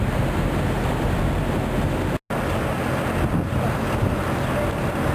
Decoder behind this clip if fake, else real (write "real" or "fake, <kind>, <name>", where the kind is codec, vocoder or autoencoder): real